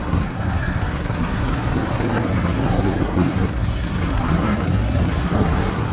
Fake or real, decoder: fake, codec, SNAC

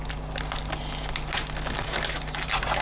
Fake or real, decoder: real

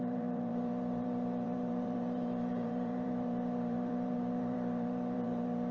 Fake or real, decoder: fake, vocoder, BigVGAN v2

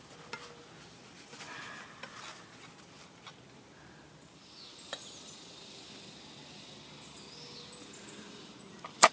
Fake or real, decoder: real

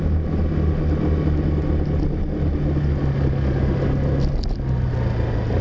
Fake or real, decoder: real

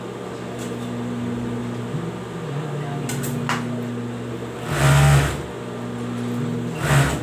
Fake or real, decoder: real